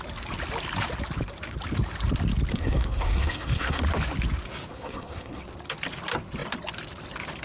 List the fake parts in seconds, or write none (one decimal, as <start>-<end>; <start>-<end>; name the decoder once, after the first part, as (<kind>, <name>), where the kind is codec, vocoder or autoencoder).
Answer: 2.5-3.8 (codec, SNAC); 4.7-5.4